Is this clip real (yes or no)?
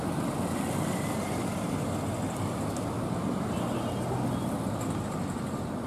yes